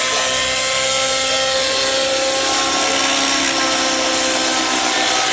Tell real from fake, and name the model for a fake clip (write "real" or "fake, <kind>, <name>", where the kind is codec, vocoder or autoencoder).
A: real